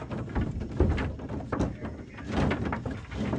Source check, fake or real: real